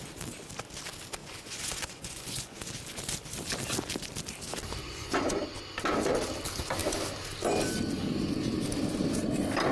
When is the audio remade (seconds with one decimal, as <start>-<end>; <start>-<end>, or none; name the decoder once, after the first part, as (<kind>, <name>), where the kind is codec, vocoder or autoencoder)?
1.2-2.6 (vocoder, Vocos); 4.8-5.4